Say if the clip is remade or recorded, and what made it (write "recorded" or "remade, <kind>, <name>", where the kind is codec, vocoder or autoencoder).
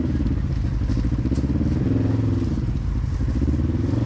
recorded